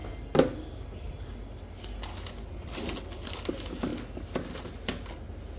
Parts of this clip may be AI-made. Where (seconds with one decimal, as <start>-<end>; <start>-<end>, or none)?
none